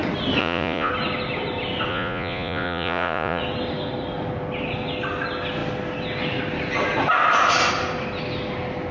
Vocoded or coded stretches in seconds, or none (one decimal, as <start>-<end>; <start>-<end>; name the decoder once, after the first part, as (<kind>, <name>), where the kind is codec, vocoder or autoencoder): 0.4-0.9 (vocoder, Vocos); 1.9-3.4